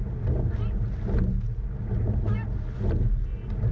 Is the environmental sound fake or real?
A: real